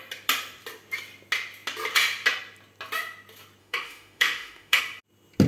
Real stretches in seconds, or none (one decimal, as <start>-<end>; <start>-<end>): 0.0-3.6; 4.8-5.5